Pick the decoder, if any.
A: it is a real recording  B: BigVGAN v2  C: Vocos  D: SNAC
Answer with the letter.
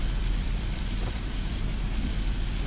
B